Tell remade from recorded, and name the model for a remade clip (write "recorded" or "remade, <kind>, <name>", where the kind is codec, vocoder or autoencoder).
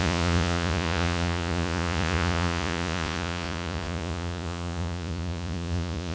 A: remade, vocoder, Vocos